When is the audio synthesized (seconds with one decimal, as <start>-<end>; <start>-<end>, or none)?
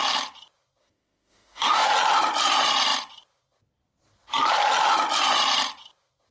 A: 0.8-1.9